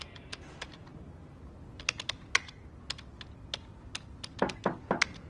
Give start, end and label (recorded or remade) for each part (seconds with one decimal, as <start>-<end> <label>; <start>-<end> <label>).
0.0-5.3 recorded